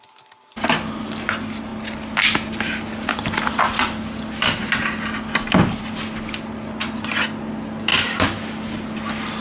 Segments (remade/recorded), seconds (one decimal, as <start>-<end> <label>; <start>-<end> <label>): 0.0-9.4 recorded